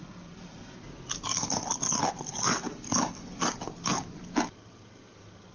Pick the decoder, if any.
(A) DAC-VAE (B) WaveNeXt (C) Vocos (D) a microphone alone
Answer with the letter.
D